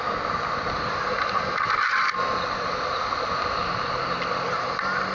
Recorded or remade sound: recorded